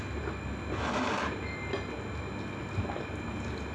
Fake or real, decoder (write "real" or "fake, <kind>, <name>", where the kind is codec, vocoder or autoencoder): real